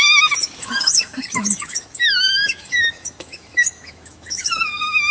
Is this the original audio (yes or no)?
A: no